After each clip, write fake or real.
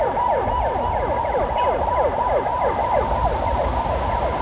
real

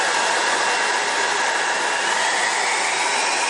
real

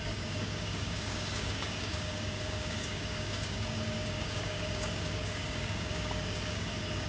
fake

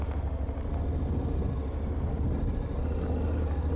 real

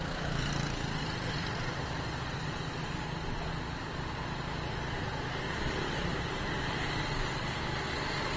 real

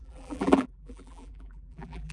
fake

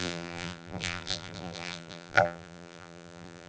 fake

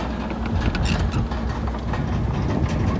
real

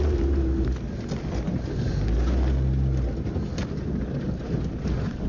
real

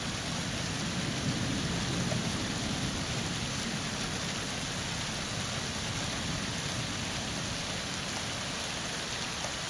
real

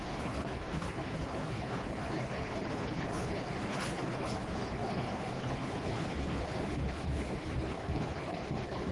fake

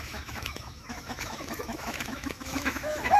fake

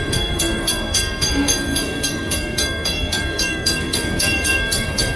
fake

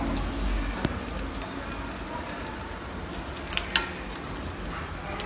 real